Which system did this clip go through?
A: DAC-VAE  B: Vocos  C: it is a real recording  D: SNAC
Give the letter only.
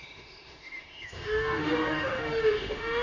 A